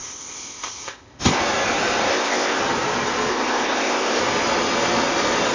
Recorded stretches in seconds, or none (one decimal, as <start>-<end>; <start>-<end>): 1.4-2.1; 2.6-3.3; 4.2-5.5